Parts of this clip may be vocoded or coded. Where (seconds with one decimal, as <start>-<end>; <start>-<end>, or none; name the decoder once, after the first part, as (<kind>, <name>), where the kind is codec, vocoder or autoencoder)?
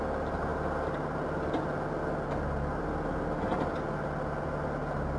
none